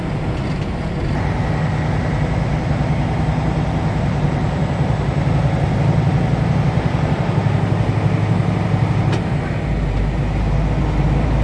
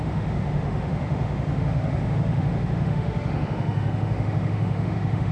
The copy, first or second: second